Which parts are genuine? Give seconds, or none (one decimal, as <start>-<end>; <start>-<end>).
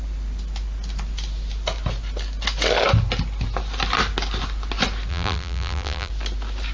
0.0-5.1; 6.1-6.7